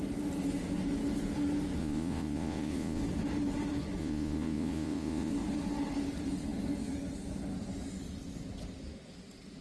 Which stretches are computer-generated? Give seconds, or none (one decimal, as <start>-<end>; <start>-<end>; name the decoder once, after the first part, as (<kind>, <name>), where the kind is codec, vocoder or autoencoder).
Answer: 1.8-3.0 (vocoder, Vocos); 4.0-5.3